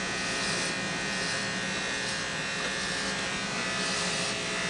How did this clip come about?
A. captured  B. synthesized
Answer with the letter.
A